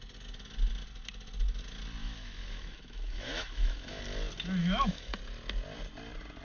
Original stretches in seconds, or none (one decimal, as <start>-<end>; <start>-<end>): 0.0-2.0; 4.0-4.6; 5.1-6.4